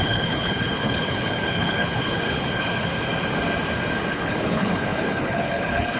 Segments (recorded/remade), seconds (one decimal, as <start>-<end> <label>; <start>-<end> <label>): 0.0-2.9 remade; 2.9-4.1 recorded; 4.1-6.0 remade